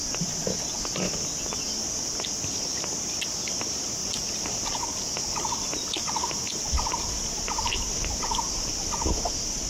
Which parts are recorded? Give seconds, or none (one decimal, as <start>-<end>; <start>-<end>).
0.0-4.0; 8.7-9.7